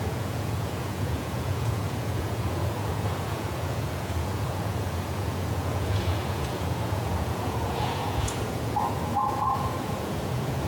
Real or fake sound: fake